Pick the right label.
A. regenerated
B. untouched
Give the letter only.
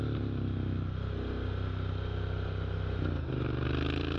B